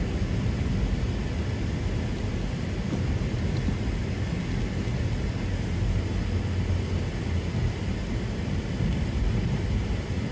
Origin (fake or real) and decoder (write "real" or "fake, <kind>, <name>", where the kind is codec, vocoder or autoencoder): real